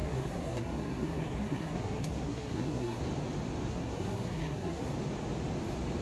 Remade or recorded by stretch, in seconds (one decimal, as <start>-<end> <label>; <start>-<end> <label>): 0.0-3.0 remade; 3.0-3.7 recorded; 3.7-4.9 remade; 4.9-6.0 recorded